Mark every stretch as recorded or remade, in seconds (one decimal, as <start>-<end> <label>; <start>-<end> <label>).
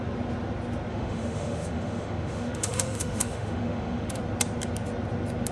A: 0.0-0.9 recorded; 0.9-4.2 remade; 4.2-5.5 recorded